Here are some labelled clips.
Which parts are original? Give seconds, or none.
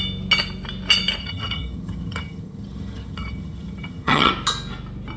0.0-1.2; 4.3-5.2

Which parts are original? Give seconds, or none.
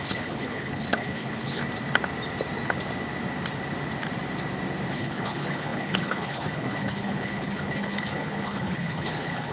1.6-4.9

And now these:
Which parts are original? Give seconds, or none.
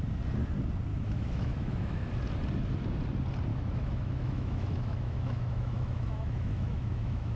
0.0-0.9; 2.1-3.5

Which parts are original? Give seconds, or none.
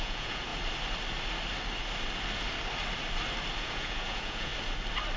0.5-3.6; 4.5-5.2